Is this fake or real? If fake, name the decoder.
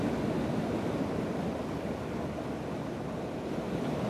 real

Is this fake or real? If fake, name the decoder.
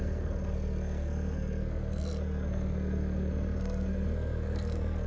fake, codec, SNAC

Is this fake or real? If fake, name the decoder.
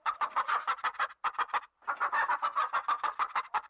real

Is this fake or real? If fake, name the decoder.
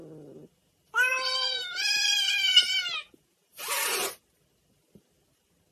real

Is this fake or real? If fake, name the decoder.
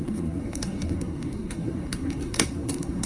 fake, codec, SNAC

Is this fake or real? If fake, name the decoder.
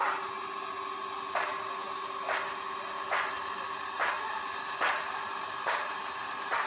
real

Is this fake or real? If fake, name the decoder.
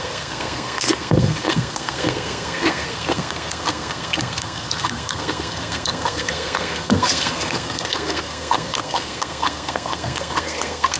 fake, codec, SNAC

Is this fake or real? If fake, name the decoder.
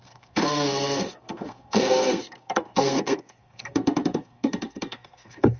fake, codec, SNAC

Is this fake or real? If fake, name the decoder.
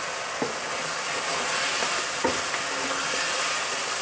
real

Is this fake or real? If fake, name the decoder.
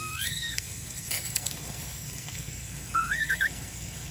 fake, codec, SNAC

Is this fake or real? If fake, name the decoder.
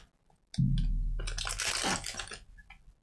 real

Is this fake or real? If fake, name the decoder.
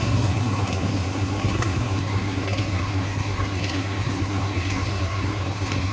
fake, codec, SNAC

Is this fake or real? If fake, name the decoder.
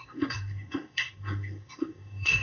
fake, codec, SNAC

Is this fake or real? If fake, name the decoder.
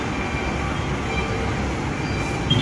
real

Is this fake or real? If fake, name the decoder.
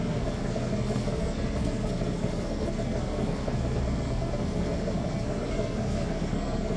fake, codec, SNAC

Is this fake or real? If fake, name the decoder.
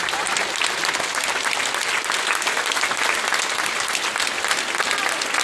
real